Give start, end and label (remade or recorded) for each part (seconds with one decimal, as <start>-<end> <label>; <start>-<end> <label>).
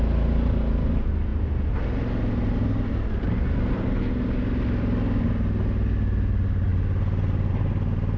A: 0.0-8.2 recorded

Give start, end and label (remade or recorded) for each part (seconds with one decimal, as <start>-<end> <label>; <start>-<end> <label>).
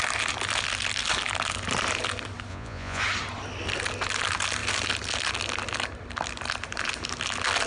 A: 0.0-2.5 recorded; 2.5-3.0 remade; 3.0-7.7 recorded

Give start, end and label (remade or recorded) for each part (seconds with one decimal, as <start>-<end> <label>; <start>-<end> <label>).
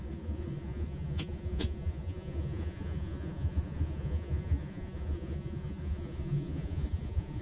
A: 0.0-7.4 remade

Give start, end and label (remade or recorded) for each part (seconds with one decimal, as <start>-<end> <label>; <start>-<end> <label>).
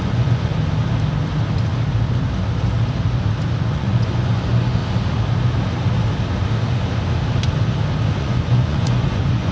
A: 0.0-0.5 remade; 0.5-3.6 recorded; 3.6-4.8 remade; 4.8-8.2 recorded; 8.2-9.5 remade